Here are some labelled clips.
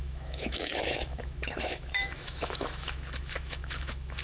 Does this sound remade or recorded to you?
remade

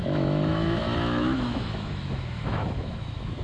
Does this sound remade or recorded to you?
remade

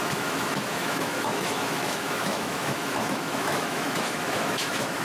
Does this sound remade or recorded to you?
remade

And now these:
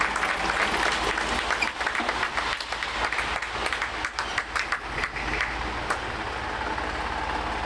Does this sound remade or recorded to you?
recorded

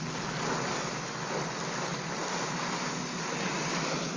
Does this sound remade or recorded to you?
recorded